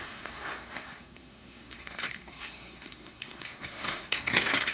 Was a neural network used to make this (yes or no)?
yes